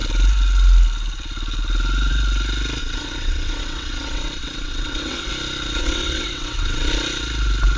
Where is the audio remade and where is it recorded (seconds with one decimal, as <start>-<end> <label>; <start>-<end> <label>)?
0.0-2.8 recorded; 2.8-5.3 remade; 5.3-5.8 recorded; 5.8-6.9 remade; 6.9-7.8 recorded